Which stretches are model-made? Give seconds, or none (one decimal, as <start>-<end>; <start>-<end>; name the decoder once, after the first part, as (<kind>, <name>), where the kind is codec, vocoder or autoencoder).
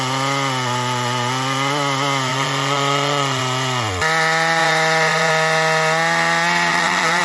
2.3-3.4 (vocoder, Vocos); 4.6-5.3; 6.7-7.2